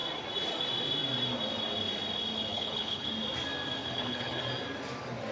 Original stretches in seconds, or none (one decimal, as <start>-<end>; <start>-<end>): 0.0-2.5; 3.1-3.8; 4.4-5.3